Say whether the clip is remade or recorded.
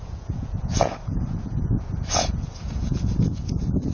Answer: remade